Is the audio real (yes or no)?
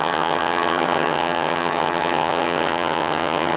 no